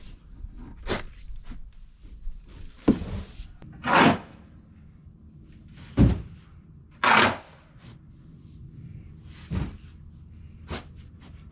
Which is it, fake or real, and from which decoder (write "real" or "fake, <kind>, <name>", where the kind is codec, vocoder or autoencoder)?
real